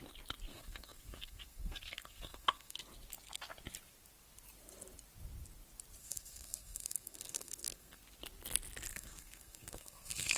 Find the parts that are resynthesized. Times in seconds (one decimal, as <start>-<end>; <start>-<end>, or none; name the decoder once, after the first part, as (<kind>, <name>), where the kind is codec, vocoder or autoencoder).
0.5-2.8 (codec, SNAC); 6.0-8.0; 8.9-10.4